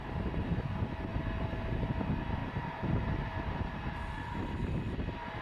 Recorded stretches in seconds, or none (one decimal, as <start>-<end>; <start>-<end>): 0.0-2.4; 3.9-5.4